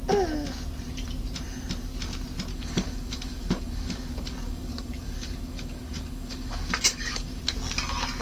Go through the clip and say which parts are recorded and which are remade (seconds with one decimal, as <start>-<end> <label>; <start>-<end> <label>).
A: 0.0-2.5 recorded; 2.5-7.4 remade; 7.4-8.2 recorded